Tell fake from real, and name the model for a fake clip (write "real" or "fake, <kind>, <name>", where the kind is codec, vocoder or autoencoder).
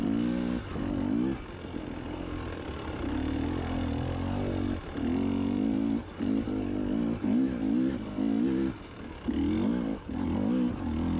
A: real